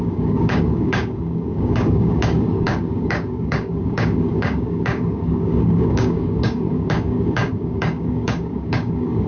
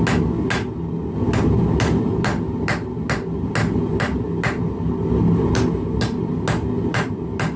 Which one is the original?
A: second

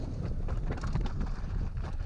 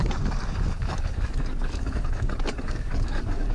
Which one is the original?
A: first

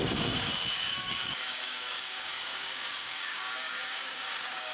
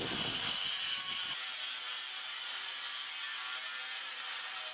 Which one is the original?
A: second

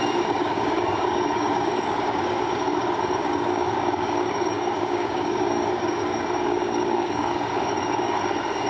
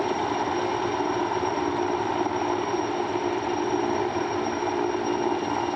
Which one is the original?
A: second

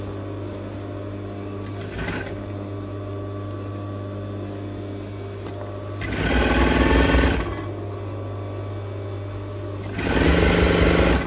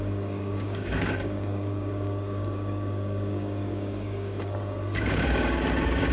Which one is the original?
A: first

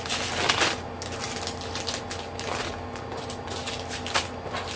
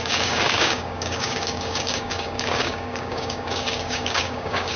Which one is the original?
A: first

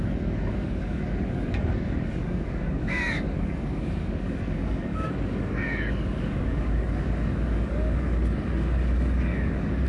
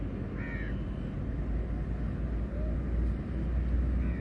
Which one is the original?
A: second